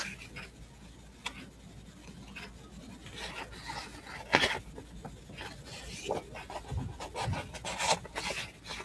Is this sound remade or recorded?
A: recorded